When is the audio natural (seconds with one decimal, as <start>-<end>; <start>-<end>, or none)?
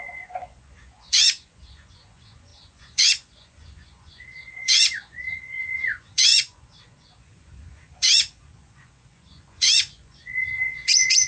none